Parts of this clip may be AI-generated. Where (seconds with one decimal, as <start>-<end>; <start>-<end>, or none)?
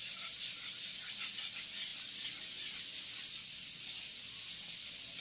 none